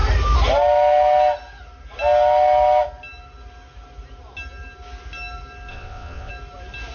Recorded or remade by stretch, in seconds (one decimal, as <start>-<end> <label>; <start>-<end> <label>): 0.0-5.7 recorded; 5.7-6.3 remade; 6.3-6.9 recorded